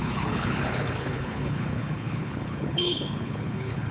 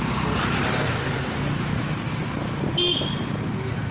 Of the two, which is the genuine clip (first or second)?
second